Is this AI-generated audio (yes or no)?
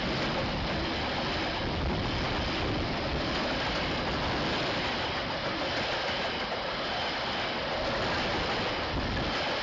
no